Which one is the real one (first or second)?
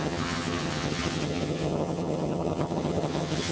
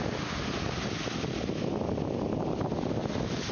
second